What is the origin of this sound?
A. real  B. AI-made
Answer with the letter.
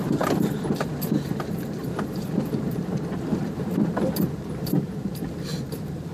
B